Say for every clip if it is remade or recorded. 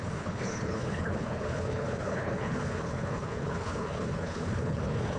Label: remade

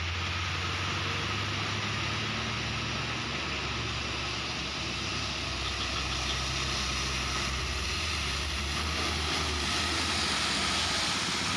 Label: recorded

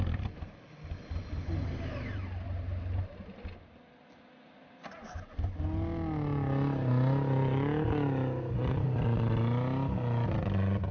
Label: recorded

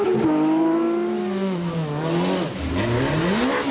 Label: recorded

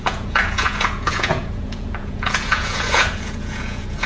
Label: remade